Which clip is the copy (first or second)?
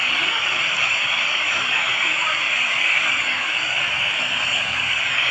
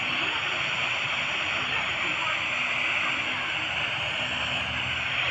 first